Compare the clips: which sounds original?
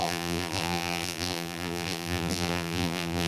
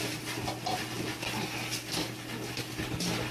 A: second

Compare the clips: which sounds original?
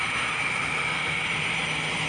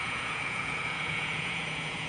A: first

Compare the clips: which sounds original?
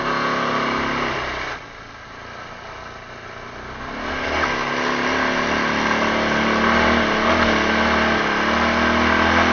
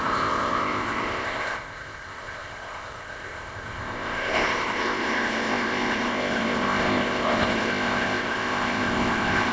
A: first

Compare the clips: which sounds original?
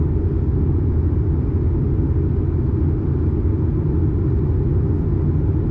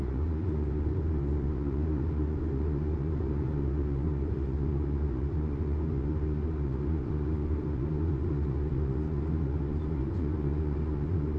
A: first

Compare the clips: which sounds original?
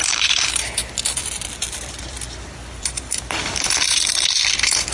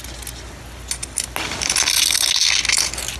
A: second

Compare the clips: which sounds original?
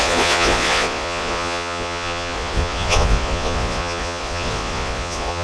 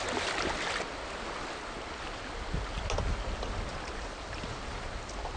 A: second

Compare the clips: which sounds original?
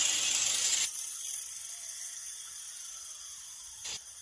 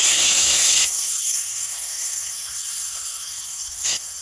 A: first